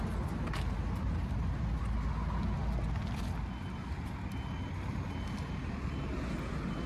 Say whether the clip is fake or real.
real